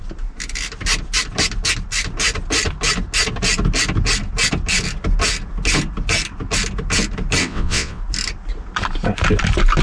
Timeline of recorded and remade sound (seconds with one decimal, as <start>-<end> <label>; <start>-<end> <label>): 0.0-7.4 recorded; 7.4-8.0 remade; 8.0-9.8 recorded